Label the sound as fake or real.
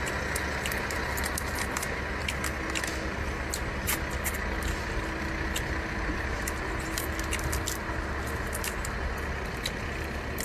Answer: real